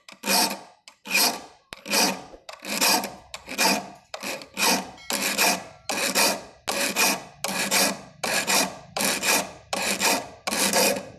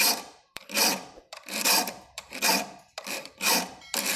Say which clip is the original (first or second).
first